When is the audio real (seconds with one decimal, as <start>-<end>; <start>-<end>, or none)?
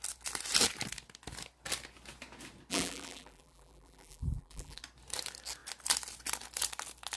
0.0-2.7; 4.8-7.2